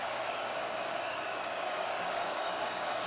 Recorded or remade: remade